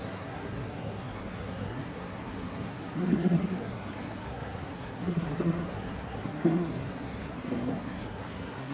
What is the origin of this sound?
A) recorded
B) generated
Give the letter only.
B